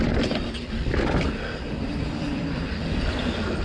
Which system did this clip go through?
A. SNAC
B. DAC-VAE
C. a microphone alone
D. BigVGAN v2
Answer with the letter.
D